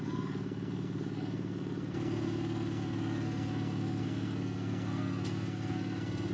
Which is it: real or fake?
fake